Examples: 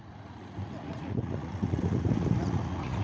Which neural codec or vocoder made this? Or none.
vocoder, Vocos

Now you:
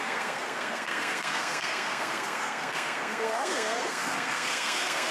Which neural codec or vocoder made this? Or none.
codec, SNAC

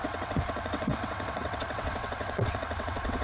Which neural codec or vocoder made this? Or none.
vocoder, WaveNeXt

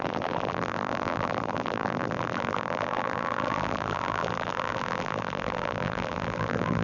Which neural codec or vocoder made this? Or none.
vocoder, BigVGAN v2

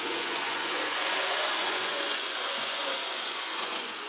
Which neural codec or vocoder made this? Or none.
vocoder, Vocos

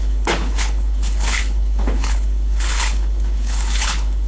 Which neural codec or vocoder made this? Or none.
codec, HILCodec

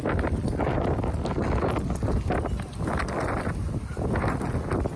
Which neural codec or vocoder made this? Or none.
none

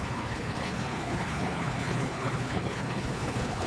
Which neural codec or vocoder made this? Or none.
codec, HILCodec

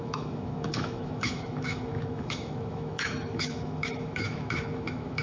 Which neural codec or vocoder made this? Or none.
autoencoder, DAC-VAE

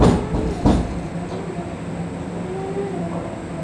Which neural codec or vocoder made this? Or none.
none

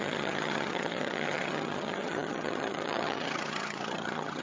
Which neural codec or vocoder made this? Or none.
vocoder, HiFi-GAN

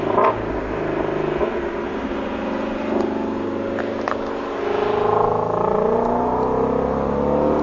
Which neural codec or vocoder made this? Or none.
none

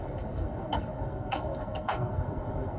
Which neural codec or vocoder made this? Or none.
codec, SNAC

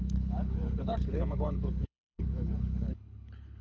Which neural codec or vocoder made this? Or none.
codec, HILCodec